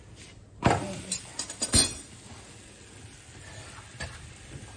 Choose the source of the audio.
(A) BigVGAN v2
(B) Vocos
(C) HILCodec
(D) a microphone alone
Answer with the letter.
D